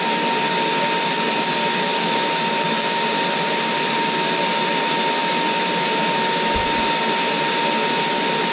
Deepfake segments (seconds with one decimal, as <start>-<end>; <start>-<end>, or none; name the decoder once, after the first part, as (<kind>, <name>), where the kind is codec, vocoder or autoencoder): none